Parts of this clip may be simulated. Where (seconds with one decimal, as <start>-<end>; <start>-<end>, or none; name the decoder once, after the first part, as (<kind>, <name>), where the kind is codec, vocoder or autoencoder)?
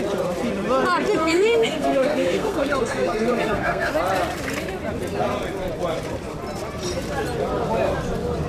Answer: 1.2-3.9 (codec, SNAC)